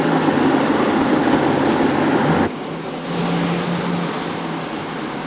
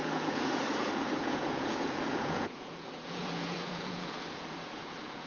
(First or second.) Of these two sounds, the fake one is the second